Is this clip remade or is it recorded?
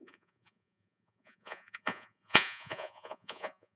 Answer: remade